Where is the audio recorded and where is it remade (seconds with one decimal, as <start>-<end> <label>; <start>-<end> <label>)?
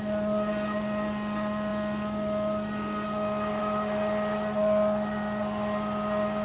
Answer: 0.0-6.4 recorded